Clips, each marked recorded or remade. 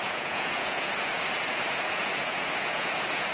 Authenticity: remade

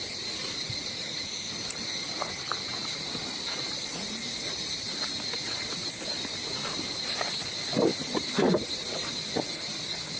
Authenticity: recorded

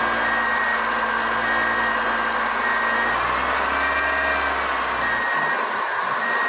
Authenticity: recorded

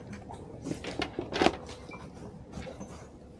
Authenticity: recorded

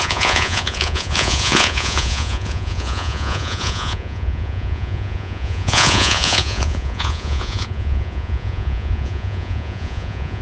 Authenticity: remade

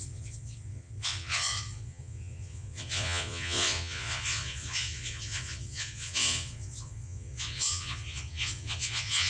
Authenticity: remade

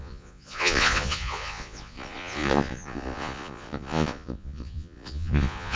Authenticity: remade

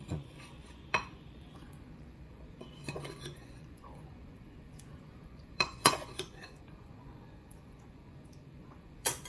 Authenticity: remade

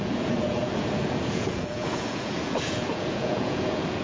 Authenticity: remade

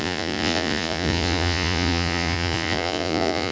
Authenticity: remade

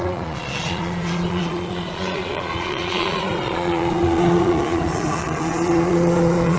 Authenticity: remade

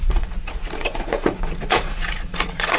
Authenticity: remade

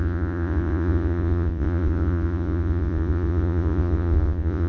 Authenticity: remade